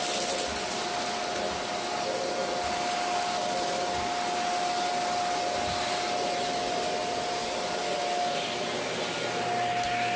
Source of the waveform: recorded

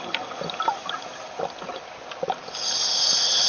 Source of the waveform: recorded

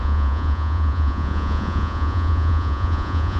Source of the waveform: remade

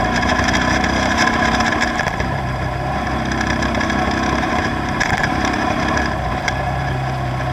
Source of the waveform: remade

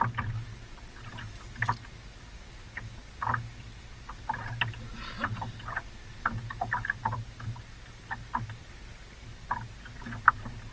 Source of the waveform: recorded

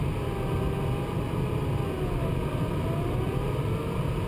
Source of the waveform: recorded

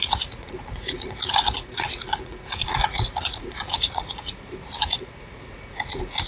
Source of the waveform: remade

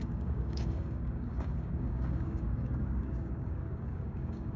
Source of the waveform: remade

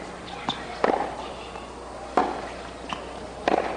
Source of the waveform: recorded